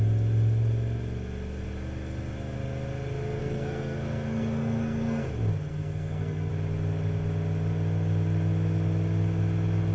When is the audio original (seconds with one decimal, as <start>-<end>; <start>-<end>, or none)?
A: 0.0-3.4; 5.3-5.7; 6.5-9.9